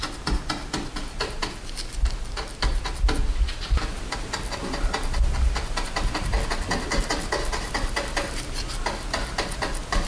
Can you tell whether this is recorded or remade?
recorded